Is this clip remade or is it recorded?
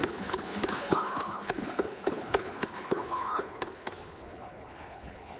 remade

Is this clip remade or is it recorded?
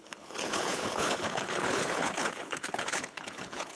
remade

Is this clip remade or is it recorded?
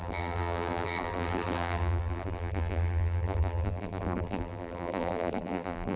remade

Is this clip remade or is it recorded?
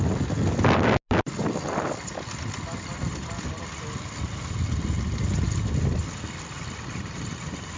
recorded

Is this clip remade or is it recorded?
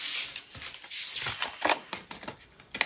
recorded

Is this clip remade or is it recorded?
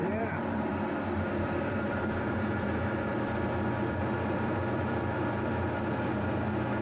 remade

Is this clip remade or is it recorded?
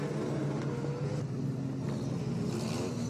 recorded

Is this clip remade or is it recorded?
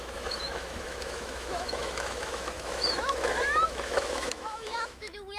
remade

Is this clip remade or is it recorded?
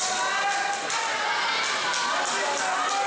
recorded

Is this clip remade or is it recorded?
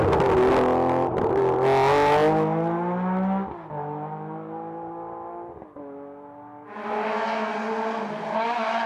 recorded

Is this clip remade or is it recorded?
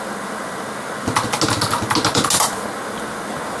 recorded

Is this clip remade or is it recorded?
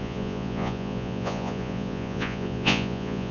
remade